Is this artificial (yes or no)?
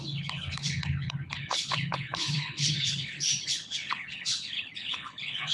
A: yes